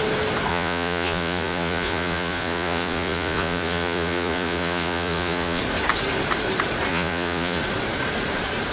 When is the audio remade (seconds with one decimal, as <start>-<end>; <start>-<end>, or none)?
0.5-5.6; 6.9-7.6